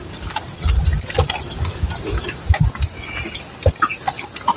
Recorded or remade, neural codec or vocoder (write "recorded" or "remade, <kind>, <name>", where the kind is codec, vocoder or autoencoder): recorded